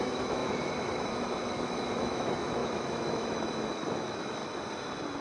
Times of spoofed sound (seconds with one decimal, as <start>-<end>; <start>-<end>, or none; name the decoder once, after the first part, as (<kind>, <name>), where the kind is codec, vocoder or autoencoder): 0.0-4.4 (autoencoder, DAC-VAE)